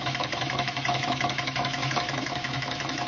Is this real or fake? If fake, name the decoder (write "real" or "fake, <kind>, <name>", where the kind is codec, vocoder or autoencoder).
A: fake, autoencoder, DAC-VAE